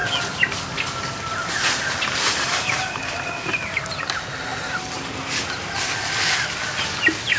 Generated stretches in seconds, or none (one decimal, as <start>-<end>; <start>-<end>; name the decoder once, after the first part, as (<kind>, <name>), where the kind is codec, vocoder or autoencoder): none